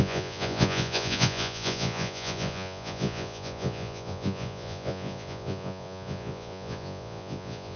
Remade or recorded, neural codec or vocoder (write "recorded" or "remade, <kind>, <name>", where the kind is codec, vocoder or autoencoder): remade, vocoder, Vocos